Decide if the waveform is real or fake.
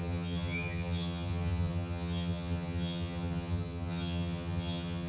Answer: fake